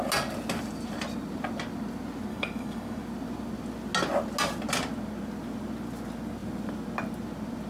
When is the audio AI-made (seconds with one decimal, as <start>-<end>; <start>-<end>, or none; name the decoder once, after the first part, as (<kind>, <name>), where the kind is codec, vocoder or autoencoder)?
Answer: 2.3-3.0 (codec, DAC)